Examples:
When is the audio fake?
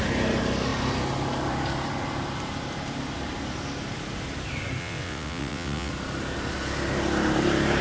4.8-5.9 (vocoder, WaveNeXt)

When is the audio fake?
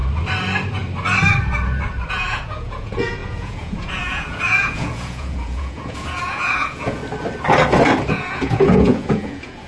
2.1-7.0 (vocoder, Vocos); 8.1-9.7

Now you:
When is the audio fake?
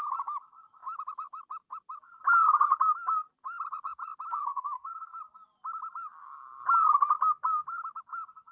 4.5-5.2 (codec, SNAC)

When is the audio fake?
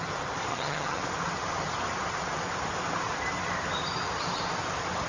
0.5-1.0 (vocoder, HiFi-GAN)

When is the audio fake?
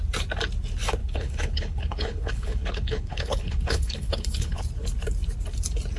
1.0-4.6 (codec, HILCodec)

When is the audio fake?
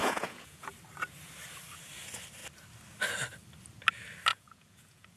0.0-0.7 (vocoder, Vocos); 4.3-5.2